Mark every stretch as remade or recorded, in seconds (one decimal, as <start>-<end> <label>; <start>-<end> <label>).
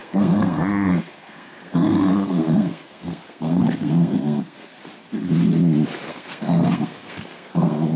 0.0-4.8 remade; 4.8-6.1 recorded; 6.1-8.0 remade